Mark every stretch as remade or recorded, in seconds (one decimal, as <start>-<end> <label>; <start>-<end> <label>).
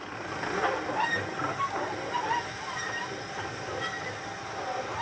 0.0-5.0 recorded